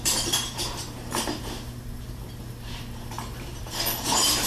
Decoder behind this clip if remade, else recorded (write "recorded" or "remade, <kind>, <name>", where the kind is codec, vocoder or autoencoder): remade, vocoder, BigVGAN v2